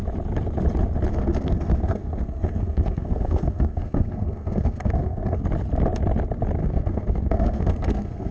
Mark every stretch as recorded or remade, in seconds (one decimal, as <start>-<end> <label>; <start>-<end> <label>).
0.0-1.1 recorded; 1.1-5.4 remade; 5.4-6.6 recorded; 6.6-8.3 remade